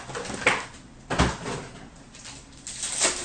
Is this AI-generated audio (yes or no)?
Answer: no